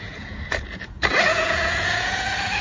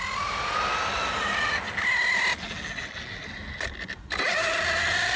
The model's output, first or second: first